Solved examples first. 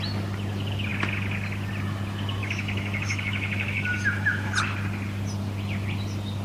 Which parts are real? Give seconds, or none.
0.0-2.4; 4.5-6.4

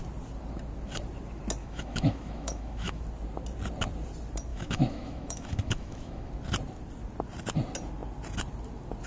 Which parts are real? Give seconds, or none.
0.0-1.6; 3.0-4.5; 6.3-9.1

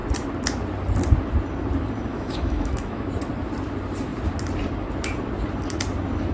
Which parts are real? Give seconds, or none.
0.0-2.1; 3.1-6.3

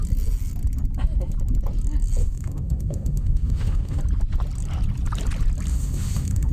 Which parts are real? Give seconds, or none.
0.0-2.2; 4.0-5.7